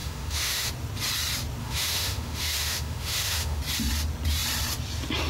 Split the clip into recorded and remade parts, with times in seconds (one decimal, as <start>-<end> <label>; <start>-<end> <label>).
0.0-0.7 remade; 0.7-1.6 recorded; 1.6-3.6 remade; 3.6-5.3 recorded